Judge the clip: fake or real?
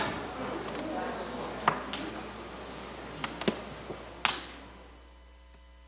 real